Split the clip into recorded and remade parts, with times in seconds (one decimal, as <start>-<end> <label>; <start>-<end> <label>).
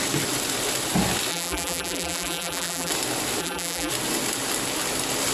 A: 0.0-1.3 recorded; 1.3-2.9 remade; 2.9-3.4 recorded; 3.4-3.9 remade; 3.9-5.3 recorded